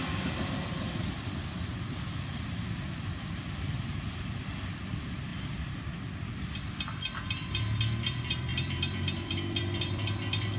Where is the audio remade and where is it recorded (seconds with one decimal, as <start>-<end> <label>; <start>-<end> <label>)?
0.0-5.3 remade; 5.3-6.3 recorded; 6.3-10.6 remade